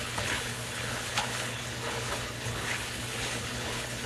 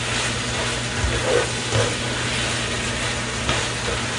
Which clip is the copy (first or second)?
first